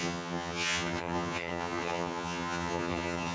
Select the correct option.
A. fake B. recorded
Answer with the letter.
A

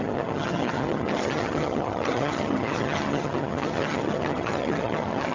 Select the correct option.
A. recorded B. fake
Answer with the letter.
B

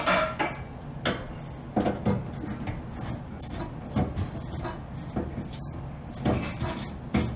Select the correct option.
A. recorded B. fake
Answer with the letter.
A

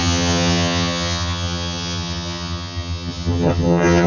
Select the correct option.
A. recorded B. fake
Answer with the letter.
B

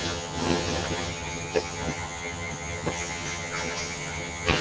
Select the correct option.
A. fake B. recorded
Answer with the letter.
A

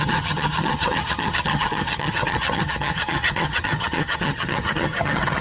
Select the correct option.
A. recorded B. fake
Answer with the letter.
B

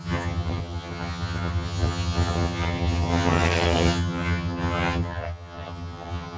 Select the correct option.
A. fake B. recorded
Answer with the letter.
A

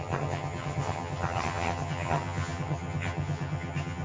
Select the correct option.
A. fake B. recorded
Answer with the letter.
A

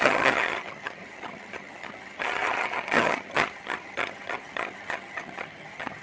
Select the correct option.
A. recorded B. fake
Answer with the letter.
B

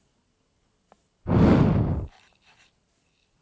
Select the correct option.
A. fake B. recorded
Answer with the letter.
B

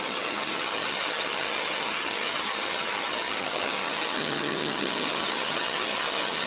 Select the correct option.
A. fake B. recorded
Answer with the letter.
A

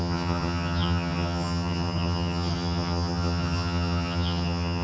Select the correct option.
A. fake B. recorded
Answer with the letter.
A